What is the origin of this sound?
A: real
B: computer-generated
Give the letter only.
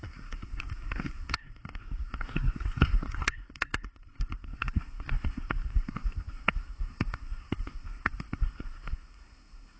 B